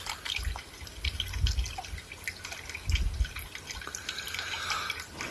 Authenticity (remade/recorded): recorded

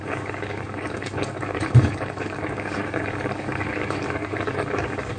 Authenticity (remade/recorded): remade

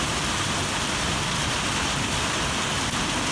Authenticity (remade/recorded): recorded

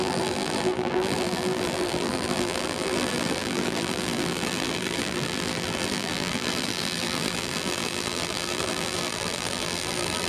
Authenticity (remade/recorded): remade